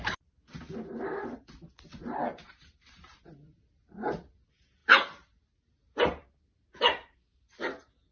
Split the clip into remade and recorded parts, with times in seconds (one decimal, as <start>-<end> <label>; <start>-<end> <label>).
0.0-1.9 recorded; 1.9-3.7 remade; 3.7-8.1 recorded